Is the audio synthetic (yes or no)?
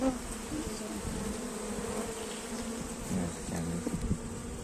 no